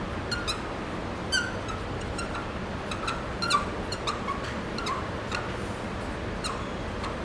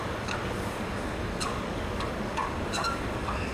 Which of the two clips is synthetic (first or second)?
second